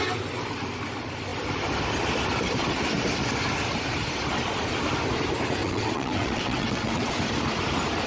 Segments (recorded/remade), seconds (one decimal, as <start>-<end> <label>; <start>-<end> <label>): 0.0-5.6 recorded; 5.6-7.1 remade; 7.1-8.1 recorded